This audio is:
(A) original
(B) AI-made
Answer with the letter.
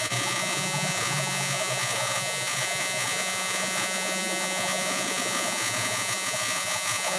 B